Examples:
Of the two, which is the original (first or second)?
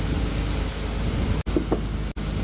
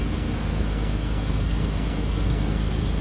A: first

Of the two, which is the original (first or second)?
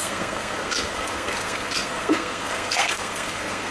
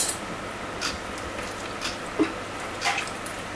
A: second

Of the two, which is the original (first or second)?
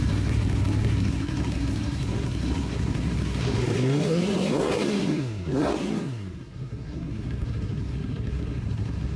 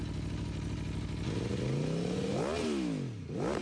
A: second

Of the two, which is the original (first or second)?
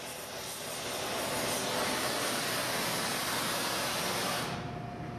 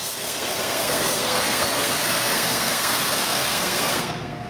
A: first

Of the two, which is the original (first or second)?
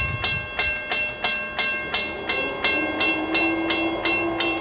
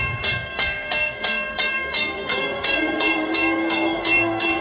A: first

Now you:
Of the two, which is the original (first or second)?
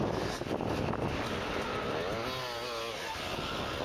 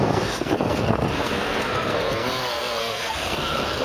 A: first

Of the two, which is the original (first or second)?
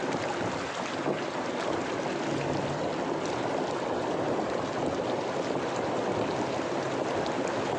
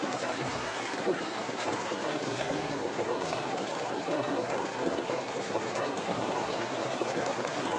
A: first